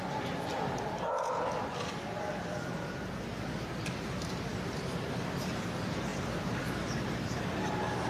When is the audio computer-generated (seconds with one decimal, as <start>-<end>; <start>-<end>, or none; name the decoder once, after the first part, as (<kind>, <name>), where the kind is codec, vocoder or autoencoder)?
0.0-0.5 (vocoder, BigVGAN v2); 4.3-8.1